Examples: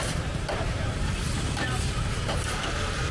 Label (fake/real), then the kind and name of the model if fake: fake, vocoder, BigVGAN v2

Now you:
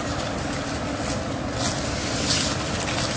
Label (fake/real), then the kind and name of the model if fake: real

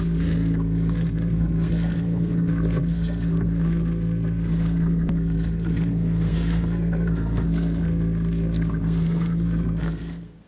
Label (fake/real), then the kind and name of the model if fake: fake, codec, SNAC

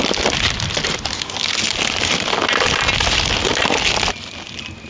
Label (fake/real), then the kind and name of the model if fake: real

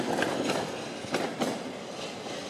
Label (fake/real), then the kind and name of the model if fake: real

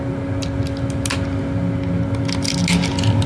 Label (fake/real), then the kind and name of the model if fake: real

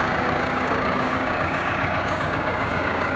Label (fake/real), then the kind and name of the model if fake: fake, codec, DAC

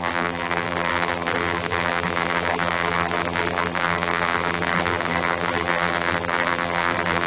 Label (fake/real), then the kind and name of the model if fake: fake, vocoder, BigVGAN v2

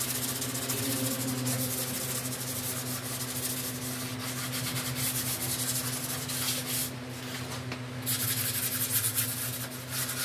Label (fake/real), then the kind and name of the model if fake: real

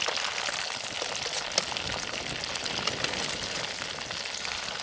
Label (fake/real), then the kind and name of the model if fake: real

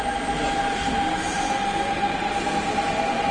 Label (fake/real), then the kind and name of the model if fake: real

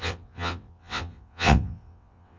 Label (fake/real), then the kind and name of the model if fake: fake, vocoder, WaveNeXt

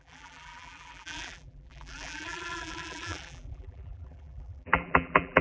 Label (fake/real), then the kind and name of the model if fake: fake, vocoder, BigVGAN v2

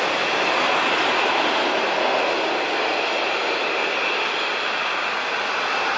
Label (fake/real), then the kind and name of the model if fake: real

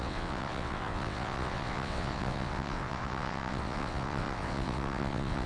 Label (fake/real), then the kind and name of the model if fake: fake, vocoder, WaveNeXt